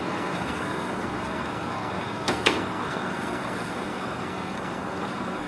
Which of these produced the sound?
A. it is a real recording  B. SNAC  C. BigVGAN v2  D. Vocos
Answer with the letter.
B